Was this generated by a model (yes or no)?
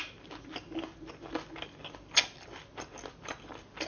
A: no